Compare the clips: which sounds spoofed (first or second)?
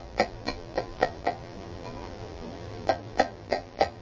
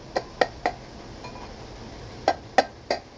first